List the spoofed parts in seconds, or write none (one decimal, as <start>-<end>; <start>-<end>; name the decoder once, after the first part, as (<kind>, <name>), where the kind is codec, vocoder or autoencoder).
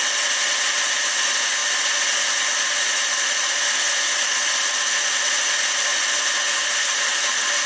none